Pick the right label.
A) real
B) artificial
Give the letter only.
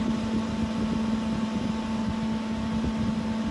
A